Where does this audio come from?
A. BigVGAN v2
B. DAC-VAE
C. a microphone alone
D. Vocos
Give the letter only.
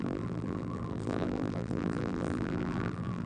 A